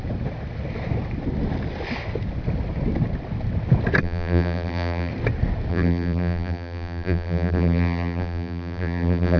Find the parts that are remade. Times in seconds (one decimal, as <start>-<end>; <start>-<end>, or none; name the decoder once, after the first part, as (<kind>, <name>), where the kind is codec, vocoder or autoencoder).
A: 4.0-5.1 (vocoder, BigVGAN v2); 5.7-9.4